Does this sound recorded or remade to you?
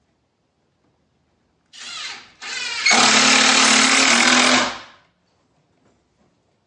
recorded